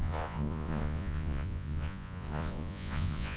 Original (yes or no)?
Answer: no